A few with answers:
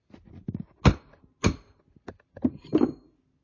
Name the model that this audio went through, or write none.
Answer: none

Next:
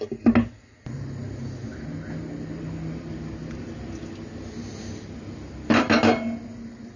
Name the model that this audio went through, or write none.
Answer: none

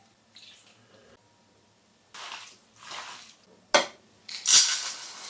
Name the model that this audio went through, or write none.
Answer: none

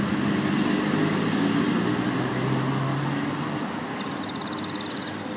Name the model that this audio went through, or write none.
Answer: none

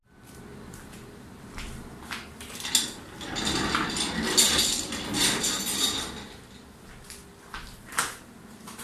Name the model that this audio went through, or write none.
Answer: none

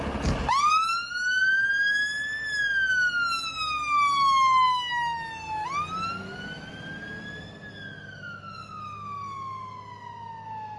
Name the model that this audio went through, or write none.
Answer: none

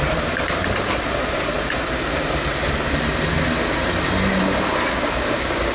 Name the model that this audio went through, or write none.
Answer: vocoder, BigVGAN v2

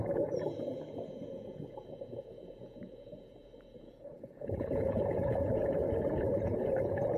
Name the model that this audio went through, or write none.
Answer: vocoder, Vocos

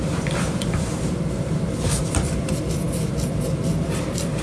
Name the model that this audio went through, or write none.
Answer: vocoder, BigVGAN v2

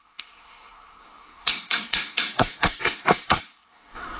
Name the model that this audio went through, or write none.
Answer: codec, SNAC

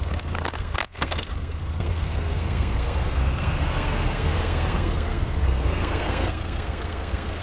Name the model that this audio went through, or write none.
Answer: codec, SNAC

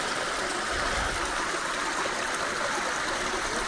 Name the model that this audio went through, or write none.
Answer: none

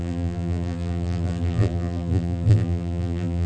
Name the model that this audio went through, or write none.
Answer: vocoder, BigVGAN v2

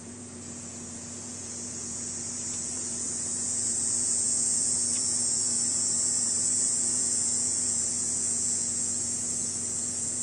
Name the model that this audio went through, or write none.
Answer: vocoder, Vocos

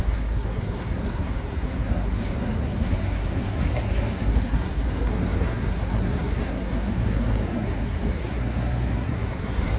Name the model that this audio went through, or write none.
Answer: codec, SNAC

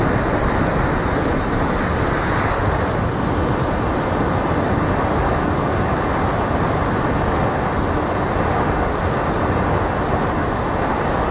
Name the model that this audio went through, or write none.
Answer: none